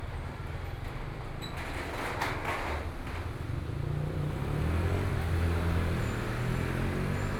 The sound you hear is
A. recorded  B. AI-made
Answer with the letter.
A